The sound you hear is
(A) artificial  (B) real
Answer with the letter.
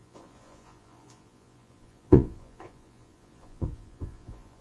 A